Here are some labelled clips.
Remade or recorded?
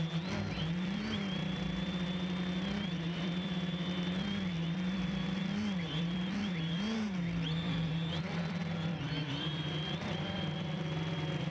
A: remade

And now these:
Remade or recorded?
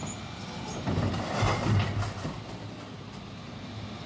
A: recorded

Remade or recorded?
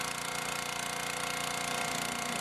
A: recorded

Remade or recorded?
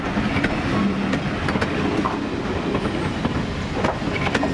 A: recorded